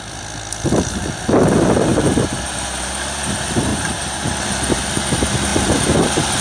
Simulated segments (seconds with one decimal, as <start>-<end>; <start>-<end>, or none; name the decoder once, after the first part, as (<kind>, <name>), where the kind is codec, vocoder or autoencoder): 1.9-2.9 (vocoder, BigVGAN v2); 3.7-4.3; 5.5-6.4